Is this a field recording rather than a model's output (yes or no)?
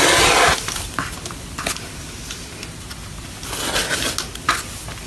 yes